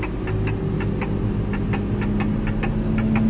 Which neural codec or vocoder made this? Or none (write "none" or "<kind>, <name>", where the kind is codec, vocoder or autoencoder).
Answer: none